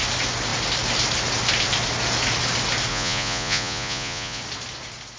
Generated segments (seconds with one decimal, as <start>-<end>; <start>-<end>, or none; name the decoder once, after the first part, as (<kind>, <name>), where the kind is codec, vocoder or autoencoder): 2.9-4.4 (vocoder, Vocos)